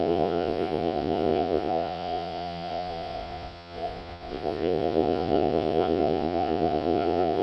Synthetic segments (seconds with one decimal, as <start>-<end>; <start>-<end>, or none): 0.0-7.4